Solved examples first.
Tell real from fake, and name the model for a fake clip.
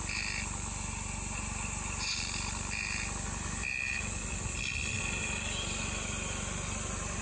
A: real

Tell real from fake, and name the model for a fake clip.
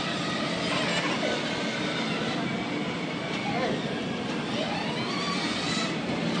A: real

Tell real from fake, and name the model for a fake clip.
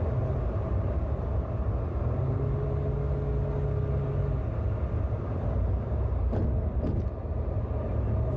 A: real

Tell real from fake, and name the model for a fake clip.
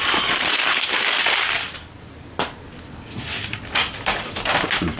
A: real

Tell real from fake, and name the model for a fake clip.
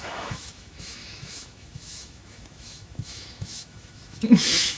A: fake, autoencoder, DAC-VAE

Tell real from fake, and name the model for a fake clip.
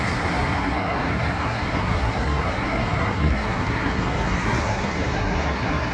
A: fake, codec, SNAC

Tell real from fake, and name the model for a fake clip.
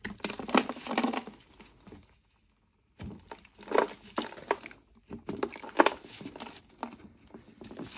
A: real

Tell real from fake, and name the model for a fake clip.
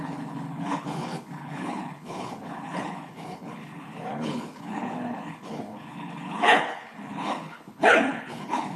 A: fake, codec, HILCodec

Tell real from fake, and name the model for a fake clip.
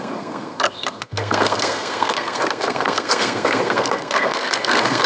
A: fake, codec, SNAC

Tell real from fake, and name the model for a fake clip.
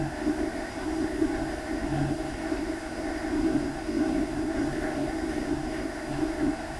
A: fake, codec, SNAC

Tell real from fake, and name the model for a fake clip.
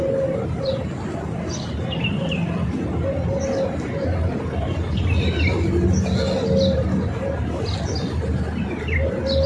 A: real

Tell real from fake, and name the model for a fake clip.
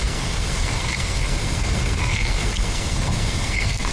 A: fake, codec, SNAC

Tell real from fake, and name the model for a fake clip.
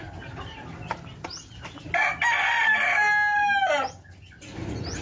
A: real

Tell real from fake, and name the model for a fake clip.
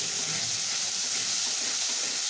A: real